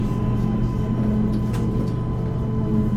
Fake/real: real